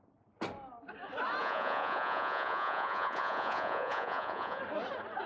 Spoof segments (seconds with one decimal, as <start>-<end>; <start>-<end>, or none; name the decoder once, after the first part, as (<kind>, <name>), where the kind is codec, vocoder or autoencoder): 1.4-4.6 (vocoder, Vocos)